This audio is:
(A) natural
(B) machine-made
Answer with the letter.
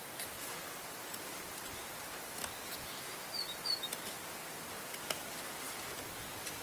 A